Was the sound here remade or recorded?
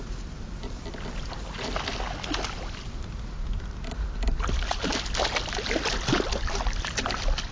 recorded